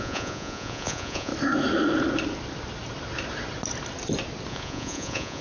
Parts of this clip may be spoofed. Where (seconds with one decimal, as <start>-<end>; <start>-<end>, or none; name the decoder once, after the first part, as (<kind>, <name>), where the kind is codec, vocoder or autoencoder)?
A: 0.0-1.3 (vocoder, Vocos); 4.5-5.4